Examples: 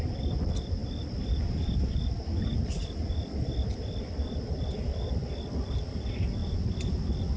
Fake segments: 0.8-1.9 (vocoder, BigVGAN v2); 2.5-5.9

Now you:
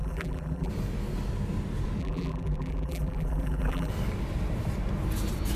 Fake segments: 0.0-0.7 (vocoder, BigVGAN v2); 2.0-3.9

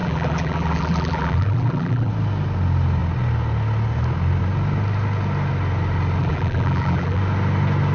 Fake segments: 0.0-2.1 (vocoder, BigVGAN v2); 6.2-7.2

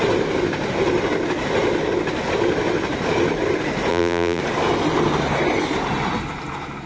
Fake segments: 3.9-4.4 (vocoder, BigVGAN v2)

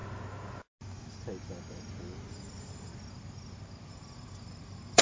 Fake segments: 2.3-2.9 (vocoder, BigVGAN v2); 3.9-5.0